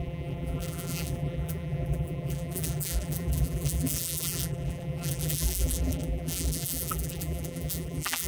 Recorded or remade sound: remade